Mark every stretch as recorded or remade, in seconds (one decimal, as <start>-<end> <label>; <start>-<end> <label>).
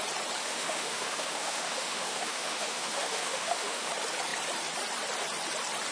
0.0-0.4 recorded; 0.4-3.9 remade; 3.9-5.9 recorded